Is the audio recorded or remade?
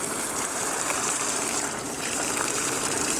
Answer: remade